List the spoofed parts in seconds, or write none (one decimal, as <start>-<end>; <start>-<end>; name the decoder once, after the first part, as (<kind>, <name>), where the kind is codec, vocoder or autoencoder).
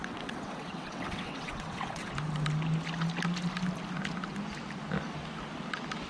0.0-2.1 (vocoder, WaveNeXt)